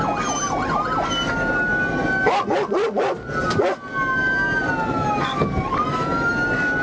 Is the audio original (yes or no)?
yes